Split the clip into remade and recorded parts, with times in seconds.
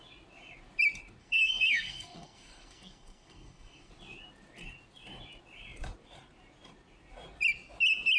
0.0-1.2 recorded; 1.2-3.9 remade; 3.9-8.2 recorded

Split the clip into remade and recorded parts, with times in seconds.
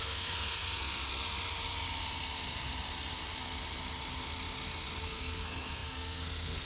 0.0-1.0 remade; 1.0-5.0 recorded; 5.0-6.7 remade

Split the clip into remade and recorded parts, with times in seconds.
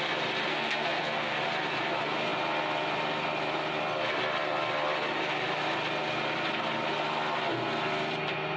0.0-0.5 recorded; 0.5-1.4 remade; 1.4-8.6 recorded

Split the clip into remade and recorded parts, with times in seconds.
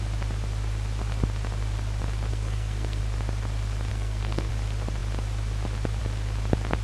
0.0-2.3 recorded; 2.3-3.0 remade; 3.0-3.9 recorded; 3.9-4.5 remade; 4.5-6.8 recorded